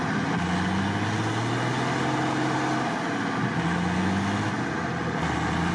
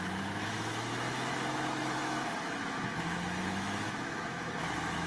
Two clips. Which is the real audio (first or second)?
first